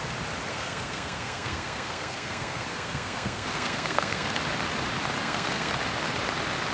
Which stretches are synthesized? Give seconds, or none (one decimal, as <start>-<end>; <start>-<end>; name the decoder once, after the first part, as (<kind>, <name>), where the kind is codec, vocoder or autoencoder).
0.5-4.3 (codec, SNAC); 5.2-5.7